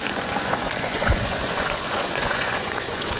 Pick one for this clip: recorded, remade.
remade